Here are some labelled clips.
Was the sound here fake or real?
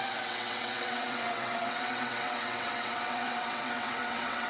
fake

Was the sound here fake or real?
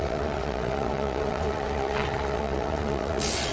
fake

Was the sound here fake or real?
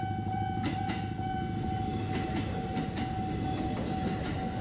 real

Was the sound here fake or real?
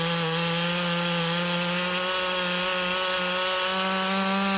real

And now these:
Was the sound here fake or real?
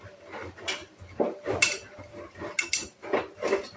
real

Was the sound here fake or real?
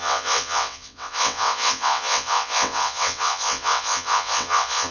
fake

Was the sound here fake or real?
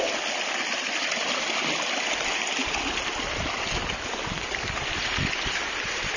real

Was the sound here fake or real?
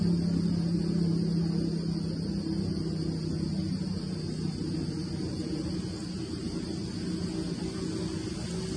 real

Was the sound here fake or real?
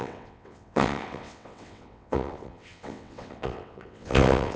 fake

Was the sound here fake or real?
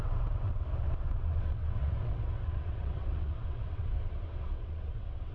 fake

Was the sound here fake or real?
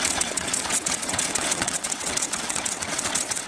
fake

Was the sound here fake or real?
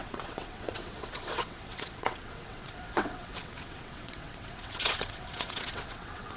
fake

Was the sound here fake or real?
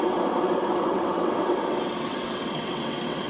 fake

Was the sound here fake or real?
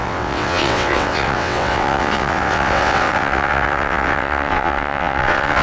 fake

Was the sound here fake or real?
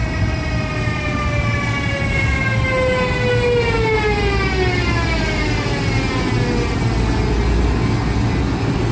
real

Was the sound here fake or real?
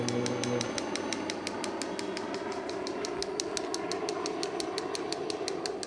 real